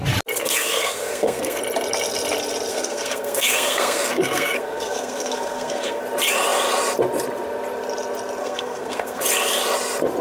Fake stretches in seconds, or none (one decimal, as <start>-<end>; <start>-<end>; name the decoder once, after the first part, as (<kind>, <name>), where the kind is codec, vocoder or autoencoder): 0.4-1.6 (codec, SNAC); 2.7-6.0; 8.4-9.2